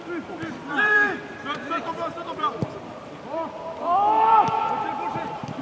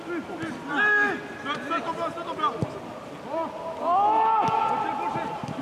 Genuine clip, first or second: second